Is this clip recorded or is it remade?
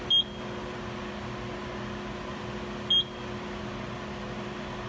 recorded